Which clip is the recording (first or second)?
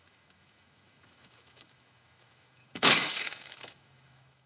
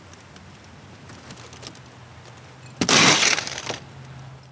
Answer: second